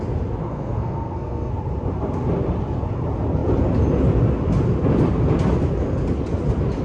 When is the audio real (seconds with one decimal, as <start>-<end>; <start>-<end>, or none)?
0.0-0.4; 1.5-6.8